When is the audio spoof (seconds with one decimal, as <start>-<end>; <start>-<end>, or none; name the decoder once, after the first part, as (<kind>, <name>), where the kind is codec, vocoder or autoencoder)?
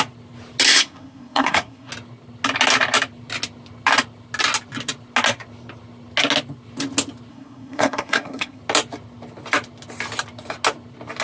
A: 0.7-1.9 (codec, SNAC); 7.3-8.6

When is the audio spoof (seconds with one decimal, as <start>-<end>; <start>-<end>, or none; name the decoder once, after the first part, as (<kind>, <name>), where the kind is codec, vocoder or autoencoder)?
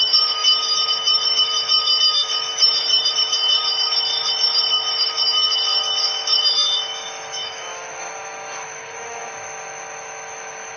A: 0.0-10.8 (autoencoder, DAC-VAE)